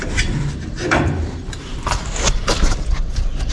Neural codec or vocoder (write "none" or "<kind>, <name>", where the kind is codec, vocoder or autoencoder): vocoder, BigVGAN v2